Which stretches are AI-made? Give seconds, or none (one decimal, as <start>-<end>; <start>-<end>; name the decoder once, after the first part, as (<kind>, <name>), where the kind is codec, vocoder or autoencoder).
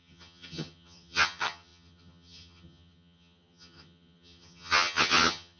0.0-5.6 (vocoder, HiFi-GAN)